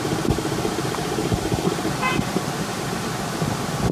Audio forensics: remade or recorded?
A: remade